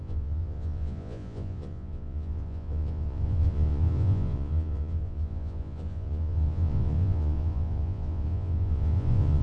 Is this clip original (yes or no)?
no